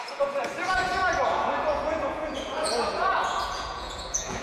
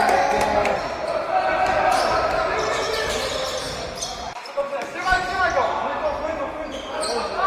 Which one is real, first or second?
second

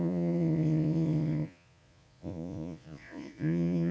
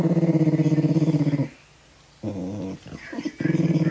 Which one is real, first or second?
second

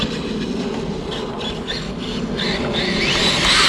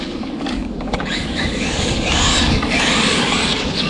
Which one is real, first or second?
first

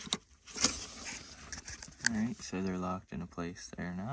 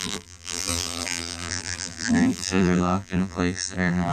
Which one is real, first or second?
first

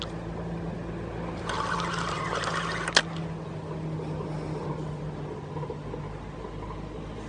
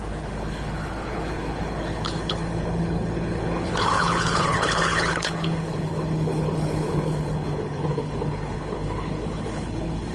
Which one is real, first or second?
first